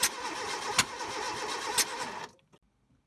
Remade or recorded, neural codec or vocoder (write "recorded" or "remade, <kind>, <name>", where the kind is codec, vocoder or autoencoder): recorded